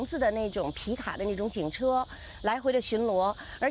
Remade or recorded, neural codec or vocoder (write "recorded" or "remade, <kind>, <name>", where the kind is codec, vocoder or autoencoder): recorded